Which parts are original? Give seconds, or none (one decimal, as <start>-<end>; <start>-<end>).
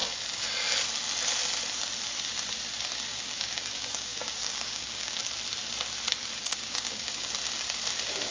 0.0-3.1; 5.2-6.4; 7.3-8.3